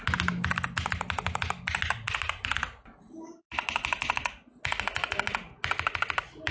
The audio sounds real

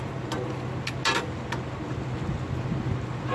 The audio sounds real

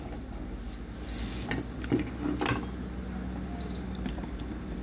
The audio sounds real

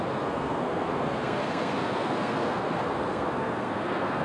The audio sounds fake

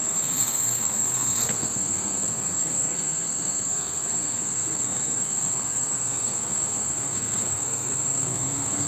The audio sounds fake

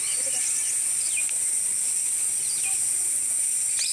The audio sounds real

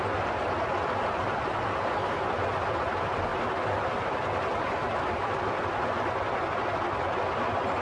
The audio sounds real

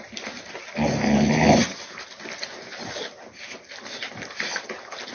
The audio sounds real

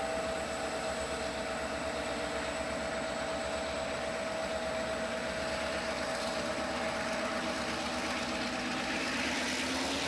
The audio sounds real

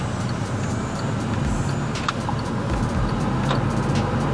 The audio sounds real